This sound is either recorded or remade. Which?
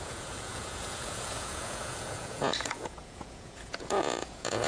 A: remade